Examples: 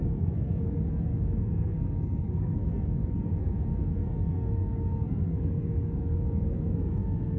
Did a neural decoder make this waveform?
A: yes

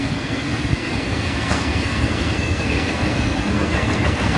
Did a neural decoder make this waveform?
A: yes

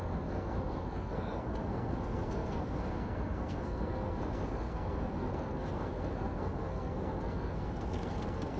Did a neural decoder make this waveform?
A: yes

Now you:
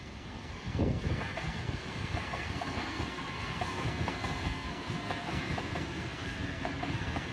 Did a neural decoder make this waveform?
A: yes